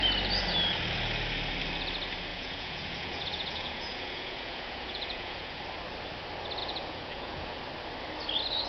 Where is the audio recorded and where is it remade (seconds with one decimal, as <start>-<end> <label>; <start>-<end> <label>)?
0.0-2.3 recorded; 2.3-5.6 remade; 5.6-6.6 recorded; 6.6-7.6 remade; 7.6-8.7 recorded